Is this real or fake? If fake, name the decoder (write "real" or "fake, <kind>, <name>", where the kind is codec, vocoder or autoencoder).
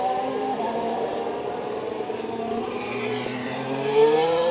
fake, vocoder, BigVGAN v2